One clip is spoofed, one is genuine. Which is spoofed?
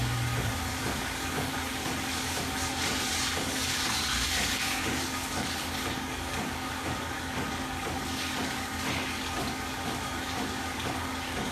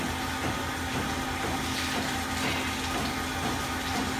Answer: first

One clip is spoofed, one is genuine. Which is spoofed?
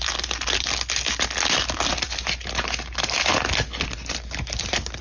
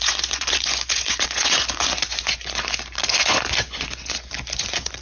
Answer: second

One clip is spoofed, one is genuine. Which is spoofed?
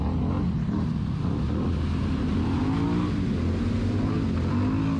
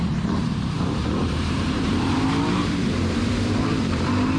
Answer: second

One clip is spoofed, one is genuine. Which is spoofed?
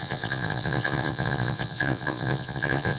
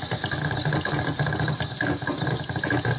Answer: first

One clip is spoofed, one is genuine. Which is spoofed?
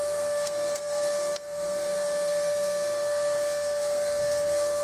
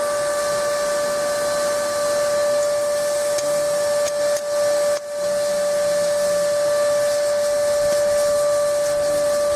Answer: first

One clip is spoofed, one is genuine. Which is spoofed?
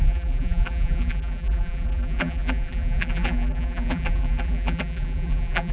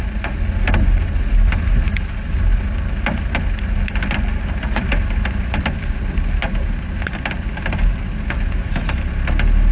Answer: first